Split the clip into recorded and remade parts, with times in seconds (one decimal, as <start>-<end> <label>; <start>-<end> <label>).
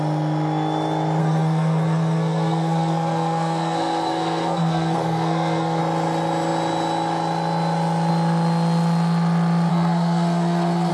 0.0-1.2 recorded; 1.2-5.8 remade; 5.8-9.7 recorded; 9.7-10.9 remade